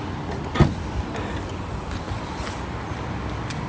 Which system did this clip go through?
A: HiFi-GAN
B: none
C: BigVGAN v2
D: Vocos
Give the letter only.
B